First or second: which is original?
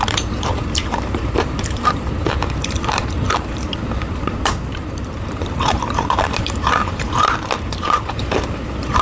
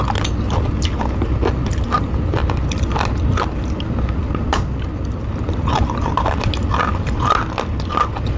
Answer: second